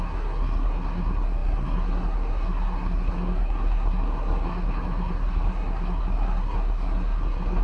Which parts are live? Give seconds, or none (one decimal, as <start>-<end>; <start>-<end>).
none